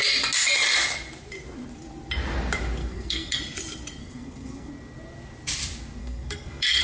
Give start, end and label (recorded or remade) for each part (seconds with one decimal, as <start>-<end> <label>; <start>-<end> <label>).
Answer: 0.0-2.8 recorded; 2.8-3.4 remade; 3.4-4.0 recorded; 4.0-4.7 remade; 4.7-6.0 recorded; 6.0-6.8 remade